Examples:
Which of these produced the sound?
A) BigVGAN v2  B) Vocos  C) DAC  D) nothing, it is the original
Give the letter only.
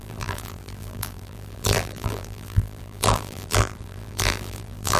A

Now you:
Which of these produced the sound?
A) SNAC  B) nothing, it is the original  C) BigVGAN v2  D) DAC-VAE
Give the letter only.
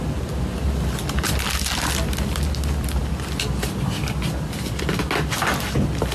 B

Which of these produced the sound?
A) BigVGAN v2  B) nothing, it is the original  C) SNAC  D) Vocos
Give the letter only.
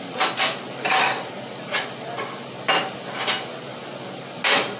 B